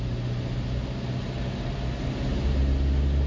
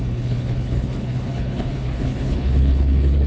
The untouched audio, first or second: first